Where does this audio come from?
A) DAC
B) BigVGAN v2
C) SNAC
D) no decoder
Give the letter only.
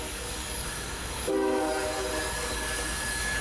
A